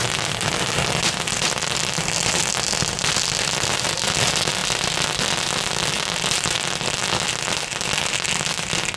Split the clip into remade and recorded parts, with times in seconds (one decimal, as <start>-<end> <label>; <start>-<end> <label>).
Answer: 0.0-9.0 recorded